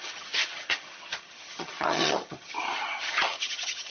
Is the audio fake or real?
fake